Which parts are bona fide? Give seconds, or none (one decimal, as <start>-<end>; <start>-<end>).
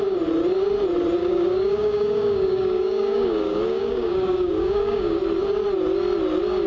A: 0.0-1.2; 5.2-6.7